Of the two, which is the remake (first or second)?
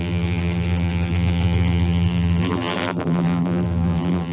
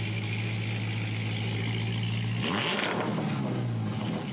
first